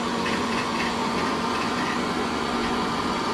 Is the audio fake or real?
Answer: fake